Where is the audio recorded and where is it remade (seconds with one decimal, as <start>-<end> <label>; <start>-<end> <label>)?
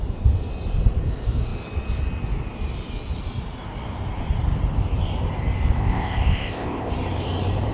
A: 0.0-5.8 recorded; 5.8-6.9 remade; 6.9-7.7 recorded